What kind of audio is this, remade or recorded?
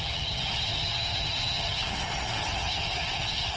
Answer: remade